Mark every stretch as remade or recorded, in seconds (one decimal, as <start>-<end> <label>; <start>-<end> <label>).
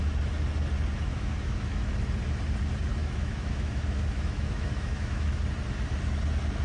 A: 0.0-1.1 recorded; 1.1-1.9 remade; 1.9-3.0 recorded; 3.0-5.4 remade; 5.4-6.6 recorded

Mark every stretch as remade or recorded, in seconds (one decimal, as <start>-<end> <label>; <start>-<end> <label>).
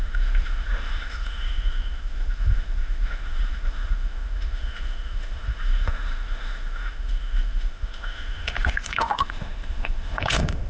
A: 0.0-10.7 remade